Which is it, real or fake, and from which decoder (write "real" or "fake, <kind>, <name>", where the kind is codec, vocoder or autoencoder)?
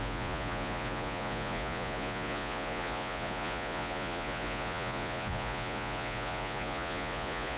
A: fake, vocoder, Vocos